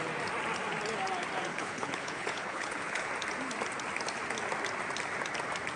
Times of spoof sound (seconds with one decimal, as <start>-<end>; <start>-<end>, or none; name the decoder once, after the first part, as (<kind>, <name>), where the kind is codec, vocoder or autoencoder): 1.5-3.1 (codec, HILCodec)

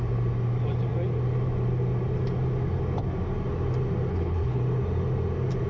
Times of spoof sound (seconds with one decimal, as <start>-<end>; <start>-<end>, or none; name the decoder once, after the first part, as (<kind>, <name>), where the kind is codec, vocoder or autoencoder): 4.1-4.6 (codec, HILCodec)

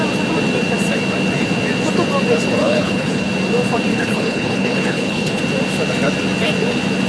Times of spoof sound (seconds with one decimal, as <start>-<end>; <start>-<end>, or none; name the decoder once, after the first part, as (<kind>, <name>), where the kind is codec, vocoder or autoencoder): 2.6-3.3 (codec, HILCodec); 3.9-5.4

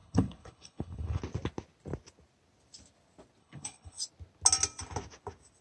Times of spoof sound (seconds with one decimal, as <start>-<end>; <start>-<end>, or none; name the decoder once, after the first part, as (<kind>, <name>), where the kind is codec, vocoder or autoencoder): 0.0-1.2 (codec, HILCodec); 3.4-4.0

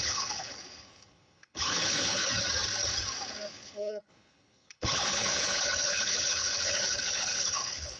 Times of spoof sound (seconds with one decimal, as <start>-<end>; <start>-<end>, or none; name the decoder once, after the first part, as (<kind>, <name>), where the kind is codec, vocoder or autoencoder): 0.0-2.3 (codec, HILCodec); 3.5-8.0